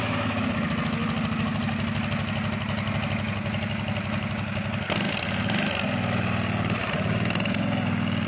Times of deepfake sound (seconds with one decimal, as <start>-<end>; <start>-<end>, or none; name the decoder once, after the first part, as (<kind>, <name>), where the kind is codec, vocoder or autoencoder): none